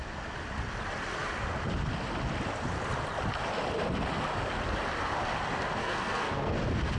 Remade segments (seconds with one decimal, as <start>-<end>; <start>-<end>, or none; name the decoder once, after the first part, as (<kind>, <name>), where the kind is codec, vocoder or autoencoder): 5.8-6.5 (codec, SNAC)